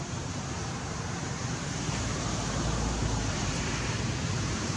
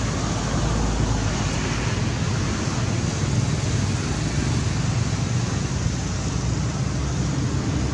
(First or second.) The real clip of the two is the second